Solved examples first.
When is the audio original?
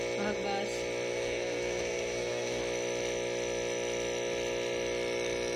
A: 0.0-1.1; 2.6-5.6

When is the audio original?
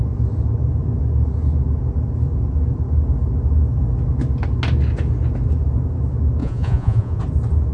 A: 0.0-6.4; 7.2-7.7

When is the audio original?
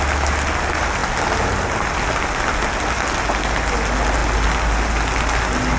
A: 0.0-5.8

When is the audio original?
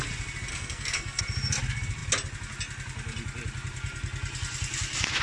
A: 0.0-0.5; 1.2-5.2